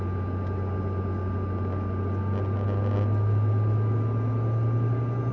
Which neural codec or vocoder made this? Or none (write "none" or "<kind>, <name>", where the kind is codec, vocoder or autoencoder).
none